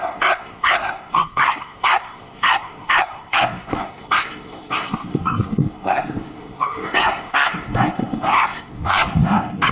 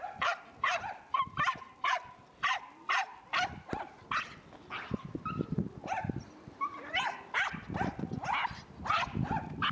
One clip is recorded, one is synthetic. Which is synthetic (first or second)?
first